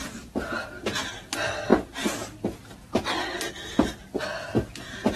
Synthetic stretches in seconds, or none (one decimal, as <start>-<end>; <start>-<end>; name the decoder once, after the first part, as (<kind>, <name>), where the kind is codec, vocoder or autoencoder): none